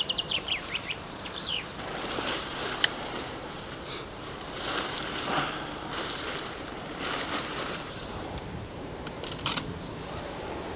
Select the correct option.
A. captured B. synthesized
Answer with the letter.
B